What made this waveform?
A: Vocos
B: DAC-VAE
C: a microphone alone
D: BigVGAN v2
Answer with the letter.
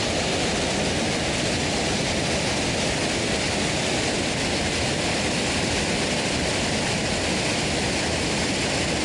C